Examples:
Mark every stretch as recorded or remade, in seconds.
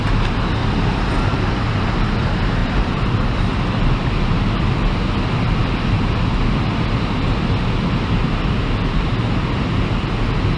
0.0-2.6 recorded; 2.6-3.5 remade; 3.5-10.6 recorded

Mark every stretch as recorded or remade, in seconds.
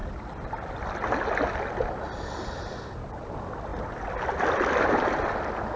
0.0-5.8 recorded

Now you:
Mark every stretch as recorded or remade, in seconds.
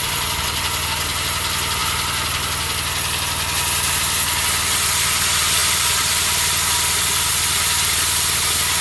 0.0-8.8 recorded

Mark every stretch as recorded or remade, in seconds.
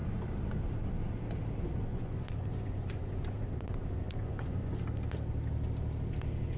0.0-1.9 recorded; 1.9-4.7 remade; 4.7-6.6 recorded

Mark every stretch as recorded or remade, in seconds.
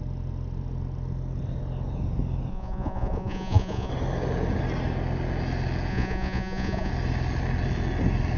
0.0-2.5 recorded; 2.5-3.9 remade; 3.9-5.9 recorded; 5.9-6.9 remade; 6.9-8.4 recorded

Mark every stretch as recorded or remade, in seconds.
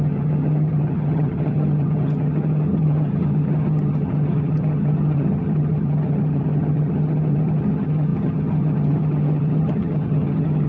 0.0-10.7 remade